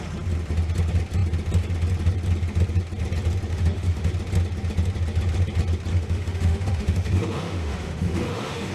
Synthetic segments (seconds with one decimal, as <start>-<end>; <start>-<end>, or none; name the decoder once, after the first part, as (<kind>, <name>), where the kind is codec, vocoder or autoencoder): 3.5-4.1 (autoencoder, DAC-VAE); 5.9-8.7